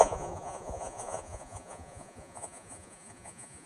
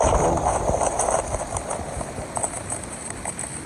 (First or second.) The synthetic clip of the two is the first